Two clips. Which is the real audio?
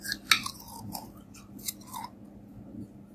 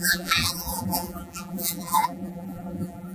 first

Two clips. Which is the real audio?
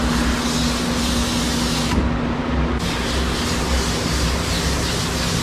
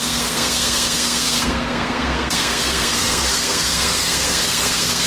first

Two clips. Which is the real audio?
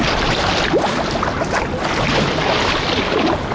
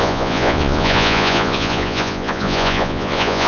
first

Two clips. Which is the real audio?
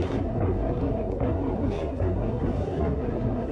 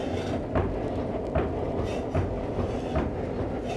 second